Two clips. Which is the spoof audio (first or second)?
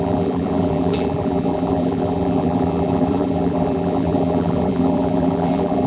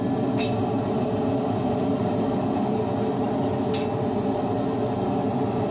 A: first